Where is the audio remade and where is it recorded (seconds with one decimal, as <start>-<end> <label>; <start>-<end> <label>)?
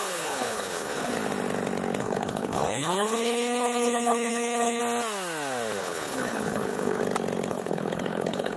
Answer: 0.0-1.1 remade; 1.1-2.0 recorded; 2.0-4.8 remade; 4.8-5.8 recorded; 5.8-7.0 remade; 7.0-7.5 recorded; 7.5-8.6 remade